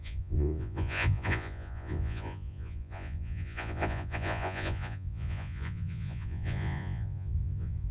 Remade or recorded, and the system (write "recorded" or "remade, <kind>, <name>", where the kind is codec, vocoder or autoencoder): remade, vocoder, Vocos